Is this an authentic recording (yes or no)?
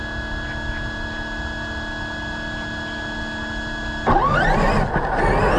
yes